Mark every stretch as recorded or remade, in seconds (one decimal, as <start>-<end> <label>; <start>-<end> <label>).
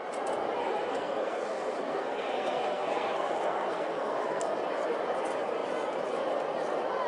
0.0-0.6 recorded; 0.6-4.4 remade; 4.4-7.1 recorded